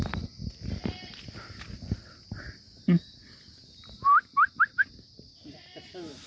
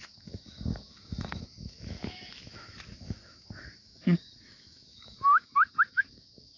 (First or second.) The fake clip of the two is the second